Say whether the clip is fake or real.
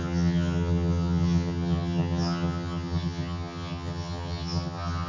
fake